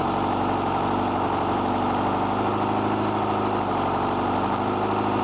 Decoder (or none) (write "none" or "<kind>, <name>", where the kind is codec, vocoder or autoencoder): none